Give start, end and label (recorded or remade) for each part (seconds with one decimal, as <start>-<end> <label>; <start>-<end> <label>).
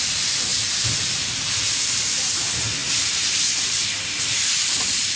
0.0-2.8 remade; 2.8-3.3 recorded; 3.3-5.2 remade